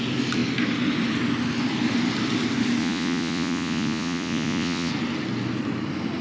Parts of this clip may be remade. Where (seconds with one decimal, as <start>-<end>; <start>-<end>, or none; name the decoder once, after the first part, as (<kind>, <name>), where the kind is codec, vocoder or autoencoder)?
2.8-4.9 (vocoder, Vocos)